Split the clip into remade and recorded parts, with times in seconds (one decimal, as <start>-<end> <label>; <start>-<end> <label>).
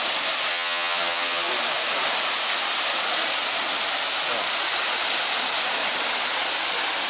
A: 0.0-0.5 recorded; 0.5-1.5 remade; 1.5-7.1 recorded